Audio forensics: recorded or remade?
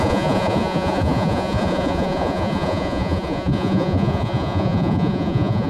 remade